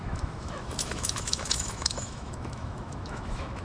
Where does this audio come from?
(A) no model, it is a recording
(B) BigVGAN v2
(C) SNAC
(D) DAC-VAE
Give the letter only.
D